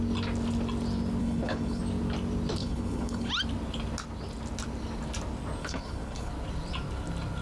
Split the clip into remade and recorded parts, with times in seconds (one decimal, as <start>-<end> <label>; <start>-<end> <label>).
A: 0.0-1.2 recorded; 1.2-1.8 remade; 1.8-2.6 recorded; 2.6-3.3 remade; 3.3-5.6 recorded; 5.6-6.3 remade; 6.3-7.4 recorded